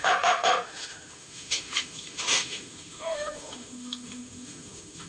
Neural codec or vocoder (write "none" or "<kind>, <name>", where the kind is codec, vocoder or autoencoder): autoencoder, DAC-VAE